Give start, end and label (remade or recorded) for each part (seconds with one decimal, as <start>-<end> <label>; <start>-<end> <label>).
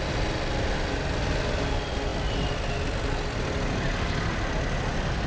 0.0-5.3 recorded